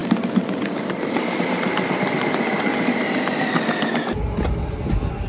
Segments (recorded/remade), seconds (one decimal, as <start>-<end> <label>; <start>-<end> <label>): 0.0-3.2 remade; 3.2-5.3 recorded